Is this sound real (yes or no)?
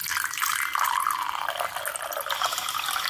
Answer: yes